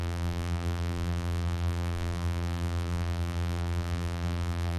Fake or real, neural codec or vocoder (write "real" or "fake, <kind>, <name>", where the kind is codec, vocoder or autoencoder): fake, vocoder, BigVGAN v2